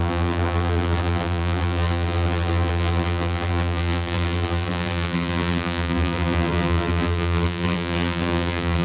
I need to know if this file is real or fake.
fake